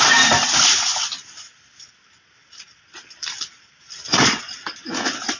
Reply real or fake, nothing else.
real